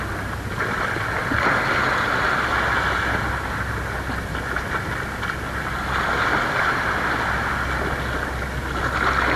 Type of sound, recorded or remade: recorded